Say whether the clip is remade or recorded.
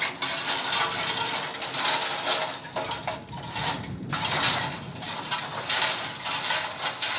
recorded